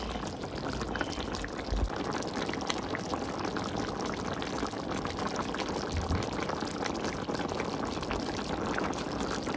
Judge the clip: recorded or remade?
recorded